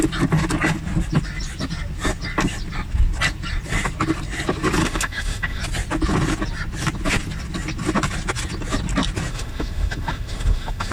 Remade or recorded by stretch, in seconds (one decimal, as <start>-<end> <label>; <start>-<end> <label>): 0.0-4.8 recorded; 4.8-5.6 remade; 5.6-9.3 recorded; 9.3-10.9 remade